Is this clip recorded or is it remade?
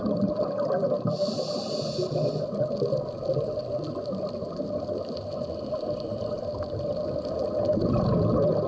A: recorded